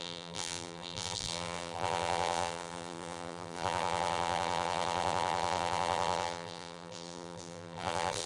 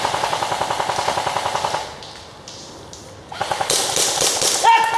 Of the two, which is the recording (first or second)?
second